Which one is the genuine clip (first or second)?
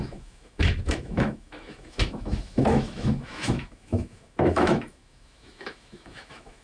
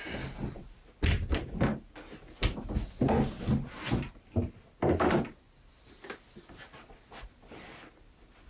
second